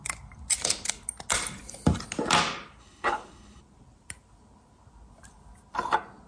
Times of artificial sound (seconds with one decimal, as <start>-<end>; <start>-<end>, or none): 2.8-3.6